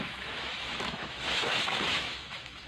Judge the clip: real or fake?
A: fake